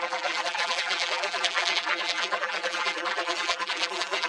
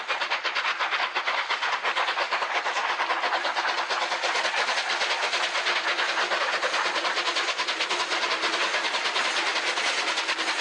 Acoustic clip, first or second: second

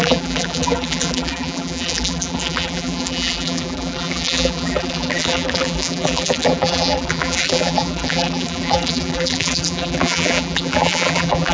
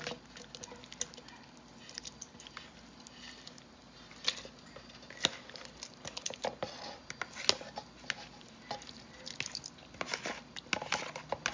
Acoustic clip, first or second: second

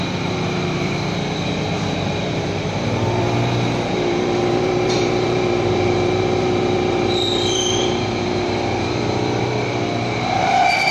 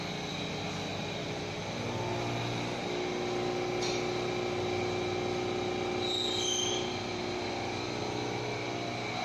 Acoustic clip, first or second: second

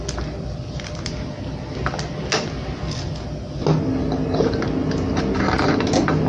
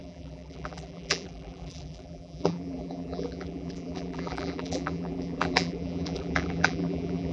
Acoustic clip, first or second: first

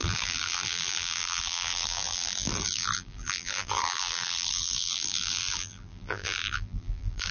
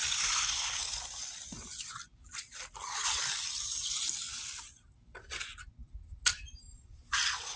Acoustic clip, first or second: second